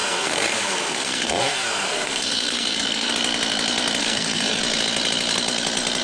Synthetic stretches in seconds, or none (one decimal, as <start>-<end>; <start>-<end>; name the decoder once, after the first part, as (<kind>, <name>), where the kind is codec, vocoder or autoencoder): 0.0-3.1 (codec, SNAC); 4.0-4.6